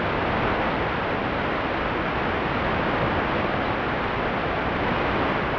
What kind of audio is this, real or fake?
real